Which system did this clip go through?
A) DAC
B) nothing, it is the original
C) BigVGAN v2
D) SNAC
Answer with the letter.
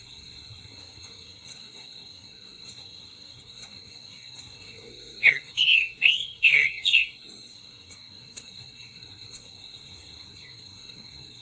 D